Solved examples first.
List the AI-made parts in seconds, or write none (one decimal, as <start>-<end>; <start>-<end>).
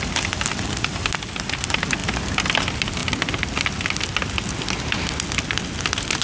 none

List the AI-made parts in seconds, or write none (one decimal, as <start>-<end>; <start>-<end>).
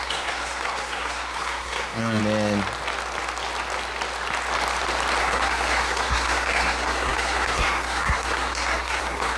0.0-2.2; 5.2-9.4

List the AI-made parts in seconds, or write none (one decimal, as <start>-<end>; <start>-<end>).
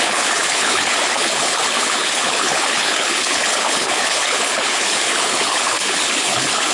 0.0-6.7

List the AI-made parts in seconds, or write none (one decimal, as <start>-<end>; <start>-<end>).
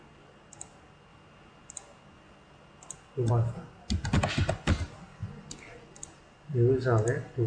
none